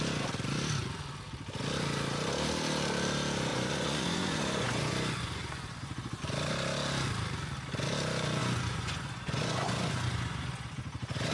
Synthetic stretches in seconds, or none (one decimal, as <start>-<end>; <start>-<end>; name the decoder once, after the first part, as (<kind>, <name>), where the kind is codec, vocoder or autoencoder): 3.5-6.2 (vocoder, Vocos); 8.4-11.3